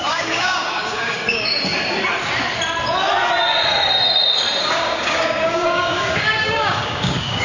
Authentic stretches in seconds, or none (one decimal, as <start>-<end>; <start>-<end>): 1.7-4.6